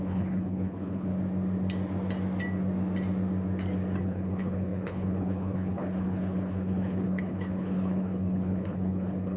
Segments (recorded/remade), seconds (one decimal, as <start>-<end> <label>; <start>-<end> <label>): 0.0-1.1 remade; 1.1-4.0 recorded; 4.0-9.4 remade